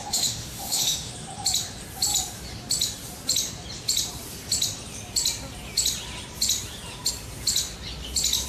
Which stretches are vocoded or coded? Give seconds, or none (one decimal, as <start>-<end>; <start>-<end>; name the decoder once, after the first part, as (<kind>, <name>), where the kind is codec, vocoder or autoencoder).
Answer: 0.0-1.1 (autoencoder, DAC-VAE)